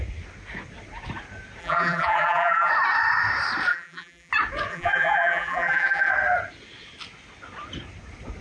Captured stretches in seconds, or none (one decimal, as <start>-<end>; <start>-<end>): 0.0-1.6; 2.7-3.7; 4.3-4.7; 6.1-8.4

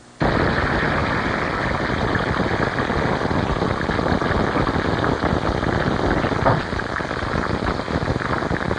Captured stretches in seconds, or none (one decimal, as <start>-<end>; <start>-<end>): 0.0-8.8

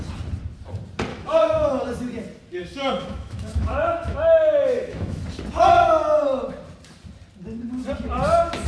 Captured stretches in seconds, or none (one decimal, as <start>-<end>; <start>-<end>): 0.0-1.1; 1.7-2.6; 5.2-8.7

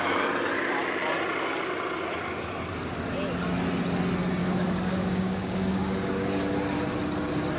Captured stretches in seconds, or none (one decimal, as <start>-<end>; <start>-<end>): 0.0-4.4; 6.4-7.6

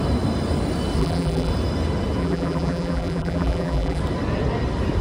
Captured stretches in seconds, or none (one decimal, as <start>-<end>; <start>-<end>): 0.0-1.0; 1.5-2.2; 4.0-5.0

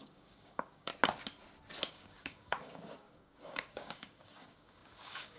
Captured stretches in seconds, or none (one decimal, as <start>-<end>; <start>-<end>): 0.9-1.9